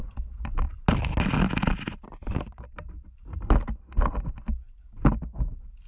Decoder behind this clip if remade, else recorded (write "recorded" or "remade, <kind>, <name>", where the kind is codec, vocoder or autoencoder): recorded